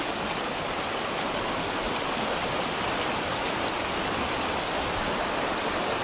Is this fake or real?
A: real